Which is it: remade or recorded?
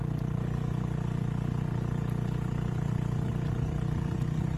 recorded